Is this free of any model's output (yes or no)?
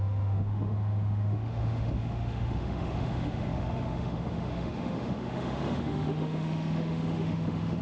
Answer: no